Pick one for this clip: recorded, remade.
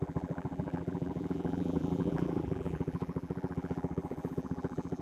remade